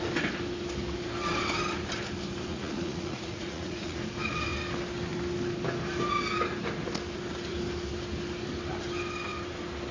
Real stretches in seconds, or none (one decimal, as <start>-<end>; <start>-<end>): 0.0-2.5; 4.0-9.9